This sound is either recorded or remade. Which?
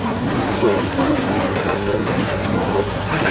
remade